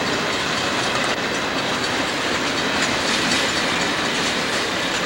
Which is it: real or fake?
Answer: real